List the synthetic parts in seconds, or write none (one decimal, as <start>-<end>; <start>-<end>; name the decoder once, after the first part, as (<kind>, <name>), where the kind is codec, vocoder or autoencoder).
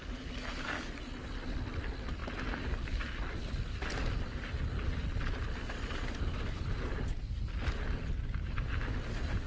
none